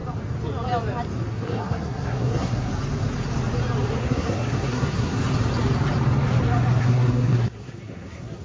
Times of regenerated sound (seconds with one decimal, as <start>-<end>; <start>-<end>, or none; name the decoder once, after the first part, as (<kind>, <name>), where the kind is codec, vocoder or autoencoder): 1.3-2.7 (codec, SNAC); 4.0-5.2; 6.8-8.4